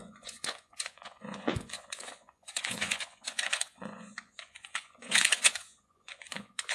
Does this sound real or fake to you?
fake